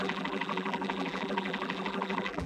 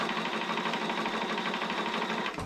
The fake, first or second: first